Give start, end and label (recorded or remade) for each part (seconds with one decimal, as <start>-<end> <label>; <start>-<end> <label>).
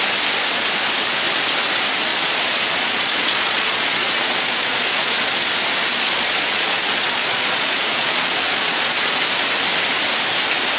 0.0-2.1 recorded; 2.1-5.5 remade; 5.5-5.9 recorded; 5.9-9.2 remade; 9.2-10.8 recorded